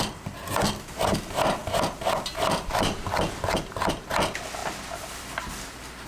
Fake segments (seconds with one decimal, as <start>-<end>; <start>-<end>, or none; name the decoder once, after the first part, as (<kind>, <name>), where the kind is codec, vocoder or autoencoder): none